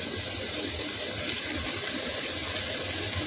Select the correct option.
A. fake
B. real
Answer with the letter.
B